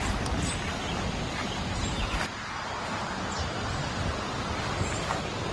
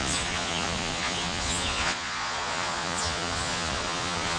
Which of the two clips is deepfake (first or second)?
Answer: second